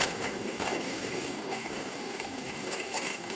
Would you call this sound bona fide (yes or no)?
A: no